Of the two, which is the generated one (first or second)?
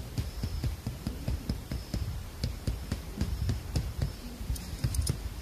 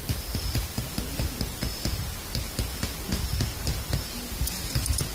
first